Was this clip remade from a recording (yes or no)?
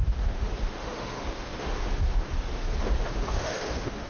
yes